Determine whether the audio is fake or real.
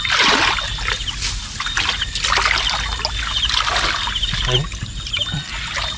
real